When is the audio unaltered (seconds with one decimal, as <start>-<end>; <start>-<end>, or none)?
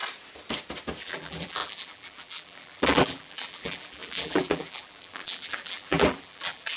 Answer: 0.0-1.0